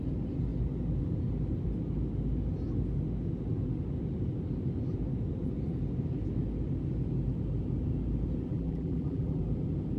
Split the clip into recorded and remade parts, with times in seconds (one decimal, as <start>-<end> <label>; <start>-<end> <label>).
0.0-8.5 recorded; 8.5-9.4 remade; 9.4-10.0 recorded